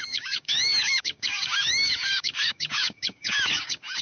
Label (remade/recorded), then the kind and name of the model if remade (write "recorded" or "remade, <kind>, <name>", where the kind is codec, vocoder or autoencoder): remade, codec, DAC